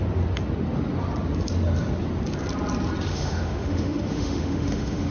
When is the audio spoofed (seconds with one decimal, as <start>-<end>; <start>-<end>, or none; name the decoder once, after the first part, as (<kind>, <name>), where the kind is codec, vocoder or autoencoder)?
3.1-5.1 (autoencoder, DAC-VAE)